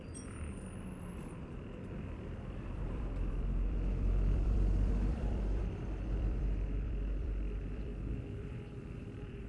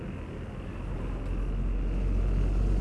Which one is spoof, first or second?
first